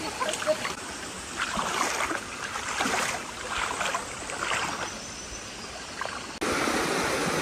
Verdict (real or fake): real